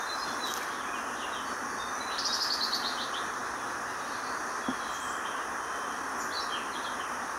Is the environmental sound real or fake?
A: real